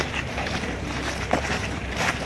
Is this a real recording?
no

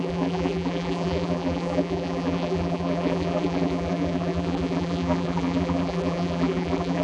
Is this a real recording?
no